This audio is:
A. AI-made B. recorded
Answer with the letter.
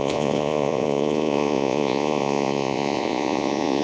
A